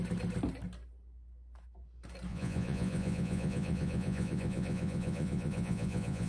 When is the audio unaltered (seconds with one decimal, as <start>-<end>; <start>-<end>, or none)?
0.0-2.3